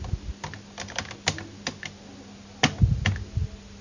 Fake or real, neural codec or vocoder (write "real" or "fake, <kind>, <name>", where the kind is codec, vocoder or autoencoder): real